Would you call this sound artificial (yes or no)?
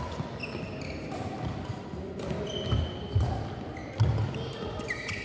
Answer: no